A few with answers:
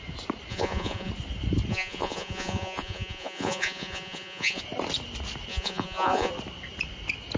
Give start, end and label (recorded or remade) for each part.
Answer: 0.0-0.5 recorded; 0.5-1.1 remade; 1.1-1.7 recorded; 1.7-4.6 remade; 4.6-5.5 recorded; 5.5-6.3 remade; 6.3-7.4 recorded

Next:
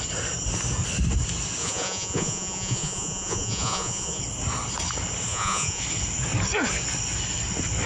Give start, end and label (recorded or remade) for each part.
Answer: 0.0-1.6 recorded; 1.6-4.2 remade; 4.2-5.3 recorded; 5.3-5.8 remade; 5.8-7.9 recorded